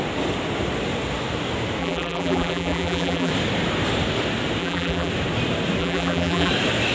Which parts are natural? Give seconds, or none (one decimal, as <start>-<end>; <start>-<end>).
0.0-1.8; 3.3-4.6; 5.1-5.8; 6.5-6.9